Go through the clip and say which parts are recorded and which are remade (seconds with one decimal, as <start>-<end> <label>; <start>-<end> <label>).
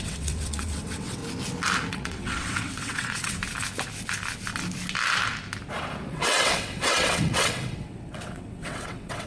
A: 0.0-1.2 remade; 1.2-1.9 recorded; 1.9-3.4 remade; 3.4-6.1 recorded; 6.1-9.3 remade